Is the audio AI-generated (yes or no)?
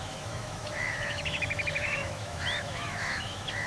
yes